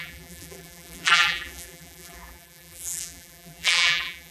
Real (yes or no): no